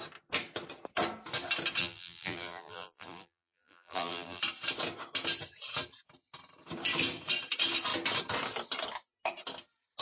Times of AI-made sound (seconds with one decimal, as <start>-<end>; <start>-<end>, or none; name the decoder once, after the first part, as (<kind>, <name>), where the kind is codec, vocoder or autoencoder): 1.8-4.4 (vocoder, BigVGAN v2)